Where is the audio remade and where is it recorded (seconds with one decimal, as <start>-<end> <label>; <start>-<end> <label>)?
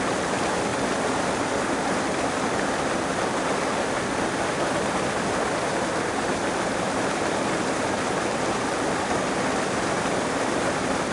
0.0-6.7 recorded; 6.7-8.8 remade; 8.8-11.1 recorded